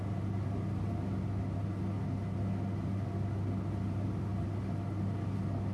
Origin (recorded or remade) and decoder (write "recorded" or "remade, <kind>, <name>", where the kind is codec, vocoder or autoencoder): recorded